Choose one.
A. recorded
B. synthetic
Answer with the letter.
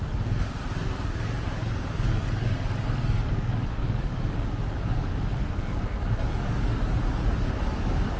B